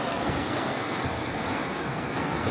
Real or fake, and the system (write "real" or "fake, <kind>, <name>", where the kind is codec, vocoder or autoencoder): fake, codec, SNAC